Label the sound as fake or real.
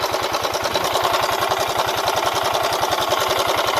real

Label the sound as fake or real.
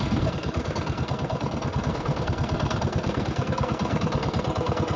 fake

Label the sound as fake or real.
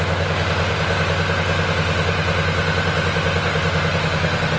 real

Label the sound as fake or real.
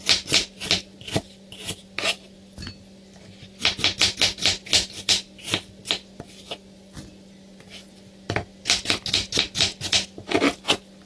real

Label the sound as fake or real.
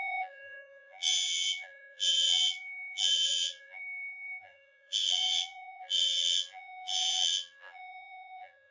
fake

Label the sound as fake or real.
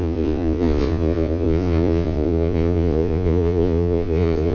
fake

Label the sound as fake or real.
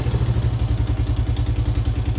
real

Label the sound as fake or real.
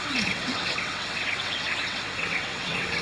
fake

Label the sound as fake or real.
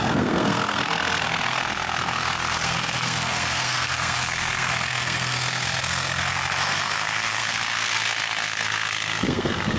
fake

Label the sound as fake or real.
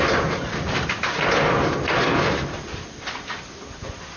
real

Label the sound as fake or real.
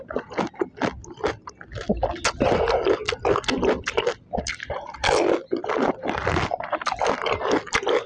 real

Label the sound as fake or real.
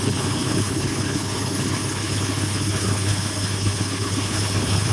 fake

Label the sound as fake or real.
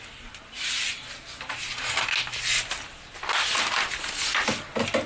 real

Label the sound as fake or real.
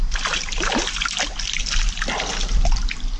real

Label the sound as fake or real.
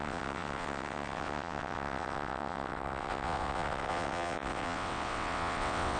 fake